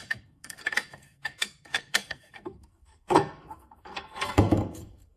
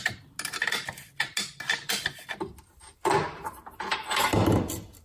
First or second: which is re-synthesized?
first